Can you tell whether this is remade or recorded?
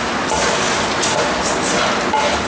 recorded